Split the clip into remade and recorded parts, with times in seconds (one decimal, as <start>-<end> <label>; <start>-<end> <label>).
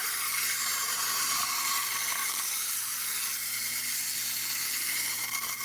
0.0-0.7 recorded; 0.7-1.6 remade; 1.6-2.2 recorded; 2.2-2.8 remade; 2.8-3.4 recorded; 3.4-5.6 remade